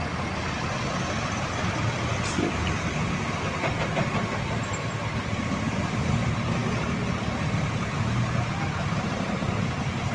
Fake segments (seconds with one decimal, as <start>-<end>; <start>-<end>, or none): none